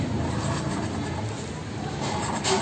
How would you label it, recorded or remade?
recorded